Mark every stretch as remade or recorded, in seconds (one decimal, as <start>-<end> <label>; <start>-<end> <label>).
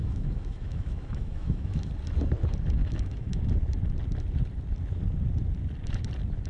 0.0-1.9 remade; 1.9-2.8 recorded; 2.8-3.4 remade; 3.4-6.5 recorded